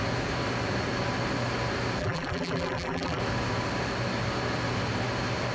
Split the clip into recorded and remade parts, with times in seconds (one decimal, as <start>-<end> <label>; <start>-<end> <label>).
0.0-2.0 recorded; 2.0-3.2 remade; 3.2-5.5 recorded